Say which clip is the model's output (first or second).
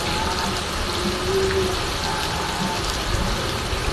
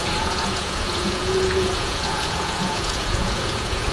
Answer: second